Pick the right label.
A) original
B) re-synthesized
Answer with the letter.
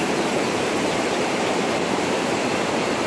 B